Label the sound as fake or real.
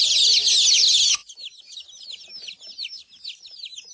real